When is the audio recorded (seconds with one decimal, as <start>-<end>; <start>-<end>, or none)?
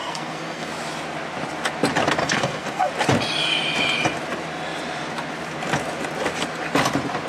0.7-2.2; 2.9-7.3